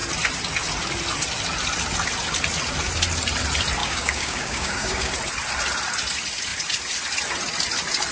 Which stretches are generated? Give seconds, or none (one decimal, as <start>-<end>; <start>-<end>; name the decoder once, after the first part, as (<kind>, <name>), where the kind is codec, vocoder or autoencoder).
3.8-5.1 (codec, DAC)